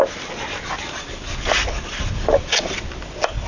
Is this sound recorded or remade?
recorded